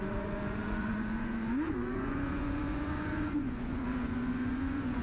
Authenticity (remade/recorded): remade